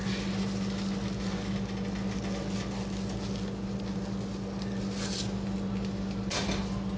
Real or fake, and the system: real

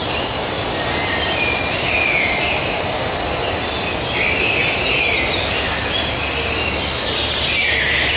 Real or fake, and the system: real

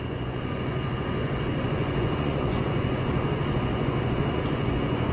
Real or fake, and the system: fake, vocoder, Vocos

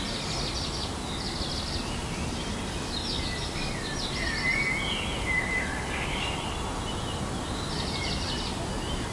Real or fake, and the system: real